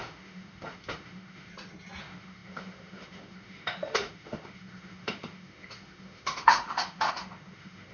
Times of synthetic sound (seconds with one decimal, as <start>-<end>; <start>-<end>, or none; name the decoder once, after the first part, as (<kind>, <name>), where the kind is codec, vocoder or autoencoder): 0.0-1.5 (autoencoder, DAC-VAE); 2.0-7.9